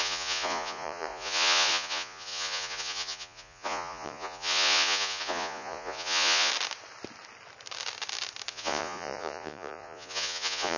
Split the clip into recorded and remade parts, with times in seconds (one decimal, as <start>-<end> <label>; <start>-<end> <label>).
0.0-6.5 remade; 6.5-8.5 recorded; 8.5-10.8 remade